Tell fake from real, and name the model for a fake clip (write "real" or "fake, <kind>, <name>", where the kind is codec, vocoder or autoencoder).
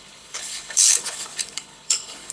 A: fake, codec, HILCodec